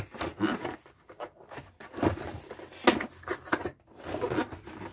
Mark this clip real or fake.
real